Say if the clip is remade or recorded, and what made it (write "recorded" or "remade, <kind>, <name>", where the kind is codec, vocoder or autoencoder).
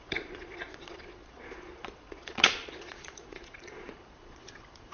remade, vocoder, Vocos